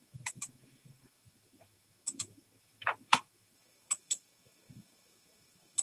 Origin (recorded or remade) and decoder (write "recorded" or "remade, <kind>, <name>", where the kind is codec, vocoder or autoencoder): remade, autoencoder, DAC-VAE